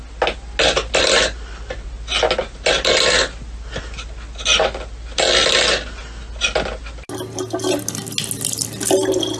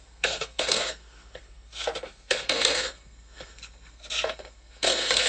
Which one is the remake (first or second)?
second